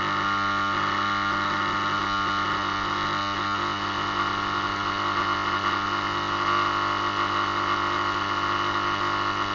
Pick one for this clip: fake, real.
real